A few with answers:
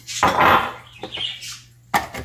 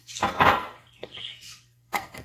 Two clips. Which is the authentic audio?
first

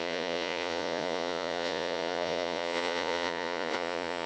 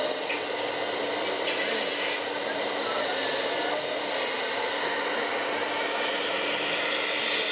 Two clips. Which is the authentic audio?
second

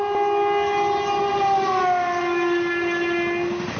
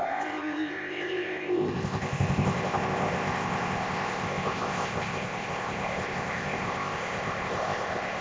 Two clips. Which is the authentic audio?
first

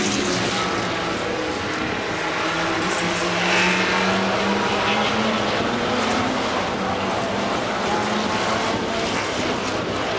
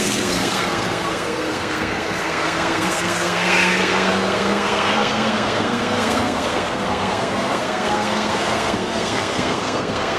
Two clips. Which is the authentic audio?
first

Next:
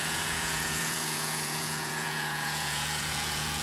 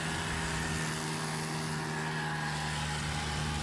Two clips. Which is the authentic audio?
second